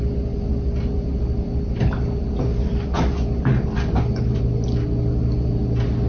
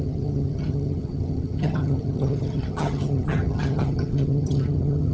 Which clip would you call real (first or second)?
first